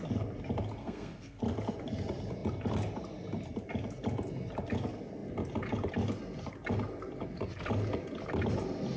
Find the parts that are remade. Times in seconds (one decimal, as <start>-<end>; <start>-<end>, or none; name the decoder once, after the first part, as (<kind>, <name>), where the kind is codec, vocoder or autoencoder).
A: 0.8-1.4 (codec, SNAC)